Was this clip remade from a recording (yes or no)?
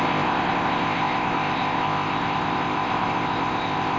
yes